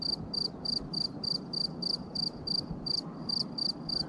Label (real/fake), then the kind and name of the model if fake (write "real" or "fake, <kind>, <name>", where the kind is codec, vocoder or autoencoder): real